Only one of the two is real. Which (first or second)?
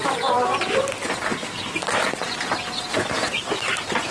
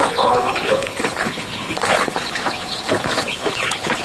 first